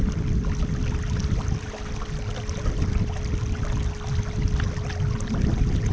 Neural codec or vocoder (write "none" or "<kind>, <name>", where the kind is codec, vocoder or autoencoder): none